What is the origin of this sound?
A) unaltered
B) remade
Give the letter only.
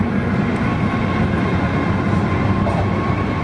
A